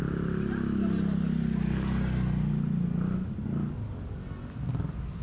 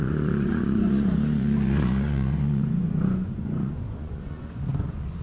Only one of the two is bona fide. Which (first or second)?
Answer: first